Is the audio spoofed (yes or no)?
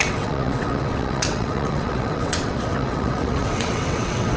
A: yes